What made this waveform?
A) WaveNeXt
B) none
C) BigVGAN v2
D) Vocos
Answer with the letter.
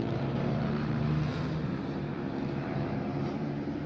C